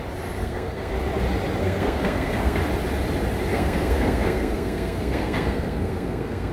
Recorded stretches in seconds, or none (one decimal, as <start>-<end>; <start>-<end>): 0.0-0.4; 0.9-1.6; 2.6-3.5